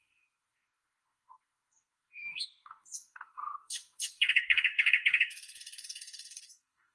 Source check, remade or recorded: remade